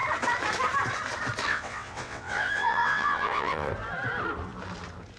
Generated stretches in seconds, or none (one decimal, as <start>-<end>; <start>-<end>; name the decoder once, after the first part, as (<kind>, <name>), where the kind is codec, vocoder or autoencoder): 1.5-3.7 (vocoder, WaveNeXt)

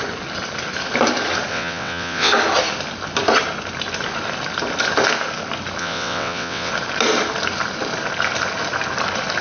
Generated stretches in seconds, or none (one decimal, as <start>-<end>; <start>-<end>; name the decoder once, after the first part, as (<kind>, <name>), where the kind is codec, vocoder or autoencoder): 1.5-2.3 (vocoder, WaveNeXt); 5.8-6.7